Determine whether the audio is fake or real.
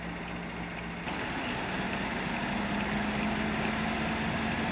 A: real